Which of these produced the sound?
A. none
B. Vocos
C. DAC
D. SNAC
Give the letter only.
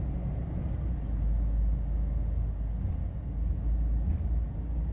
A